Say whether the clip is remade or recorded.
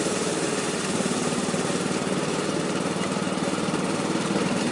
remade